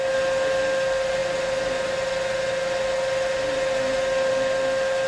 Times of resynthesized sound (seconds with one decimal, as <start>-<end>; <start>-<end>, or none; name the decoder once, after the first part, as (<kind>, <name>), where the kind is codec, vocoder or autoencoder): none